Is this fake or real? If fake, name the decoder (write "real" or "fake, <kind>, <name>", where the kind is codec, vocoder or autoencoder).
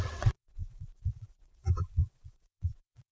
fake, vocoder, WaveNeXt